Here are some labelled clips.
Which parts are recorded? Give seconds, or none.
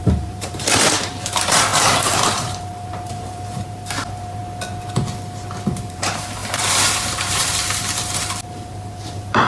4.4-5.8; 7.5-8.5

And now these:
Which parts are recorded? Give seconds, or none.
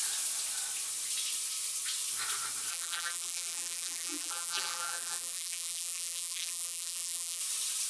0.0-2.7; 7.4-7.9